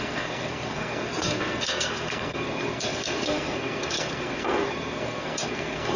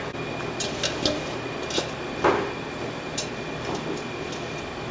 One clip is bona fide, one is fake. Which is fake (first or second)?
first